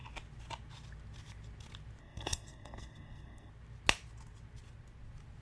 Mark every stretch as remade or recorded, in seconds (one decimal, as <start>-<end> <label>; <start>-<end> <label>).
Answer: 0.0-2.0 recorded; 2.0-3.5 remade; 3.5-5.4 recorded